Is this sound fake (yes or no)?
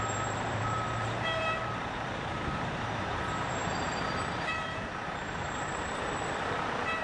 yes